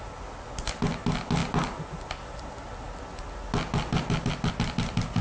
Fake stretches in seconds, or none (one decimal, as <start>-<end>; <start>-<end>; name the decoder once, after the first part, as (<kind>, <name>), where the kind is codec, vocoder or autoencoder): none